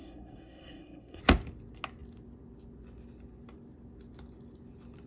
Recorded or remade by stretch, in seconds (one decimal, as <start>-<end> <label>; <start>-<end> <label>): 0.0-1.2 remade; 1.2-5.1 recorded